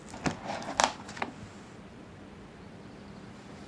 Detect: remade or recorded recorded